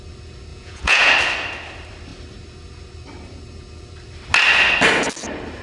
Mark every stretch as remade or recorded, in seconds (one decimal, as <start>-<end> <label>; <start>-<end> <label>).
0.0-0.5 recorded; 0.5-1.1 remade; 1.1-5.6 recorded